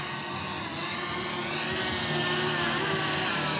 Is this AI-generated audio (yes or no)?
no